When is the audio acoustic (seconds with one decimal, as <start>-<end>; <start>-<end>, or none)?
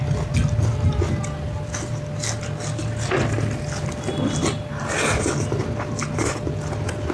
0.0-7.1